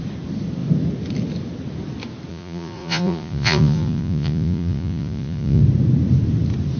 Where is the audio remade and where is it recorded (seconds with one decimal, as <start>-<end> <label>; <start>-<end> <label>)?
0.0-2.3 recorded; 2.3-5.6 remade; 5.6-6.8 recorded